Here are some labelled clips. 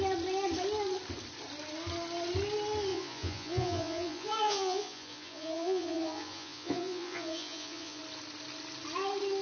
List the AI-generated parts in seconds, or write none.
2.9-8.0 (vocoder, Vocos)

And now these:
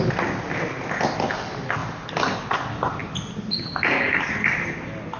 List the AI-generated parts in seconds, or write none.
none

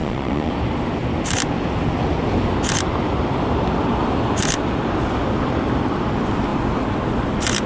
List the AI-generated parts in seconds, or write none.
0.0-0.5 (vocoder, Vocos)

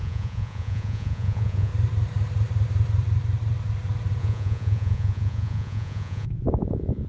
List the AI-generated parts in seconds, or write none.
0.0-1.7 (vocoder, Vocos); 4.2-7.1

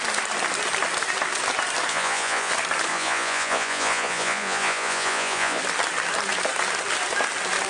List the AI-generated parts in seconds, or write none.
1.9-2.5 (vocoder, Vocos); 2.9-5.6

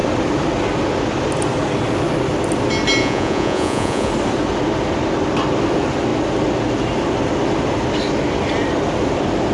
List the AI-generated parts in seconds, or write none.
3.0-4.1 (vocoder, Vocos)

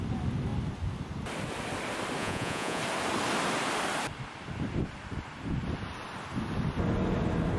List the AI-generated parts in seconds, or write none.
2.2-2.8 (vocoder, Vocos)

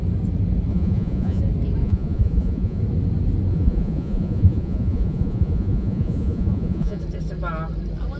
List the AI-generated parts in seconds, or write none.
0.7-1.4 (vocoder, Vocos); 1.8-2.8; 3.5-7.0